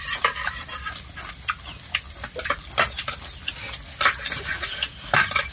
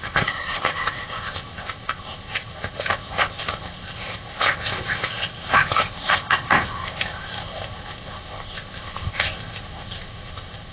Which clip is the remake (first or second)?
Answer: second